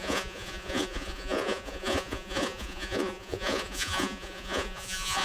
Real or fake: fake